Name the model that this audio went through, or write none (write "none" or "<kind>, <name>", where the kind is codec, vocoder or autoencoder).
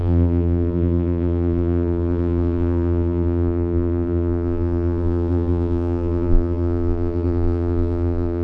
vocoder, BigVGAN v2